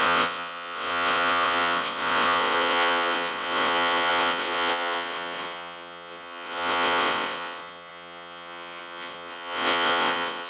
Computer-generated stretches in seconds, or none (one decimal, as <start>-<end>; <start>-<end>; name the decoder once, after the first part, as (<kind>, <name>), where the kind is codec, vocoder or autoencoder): 0.0-10.5 (vocoder, WaveNeXt)